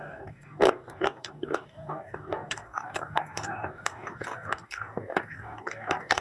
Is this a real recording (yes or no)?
no